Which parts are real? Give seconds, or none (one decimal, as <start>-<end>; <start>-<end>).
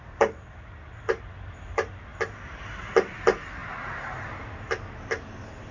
0.0-5.7